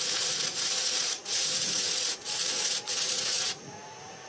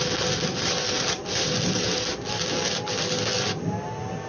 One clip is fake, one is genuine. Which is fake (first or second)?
first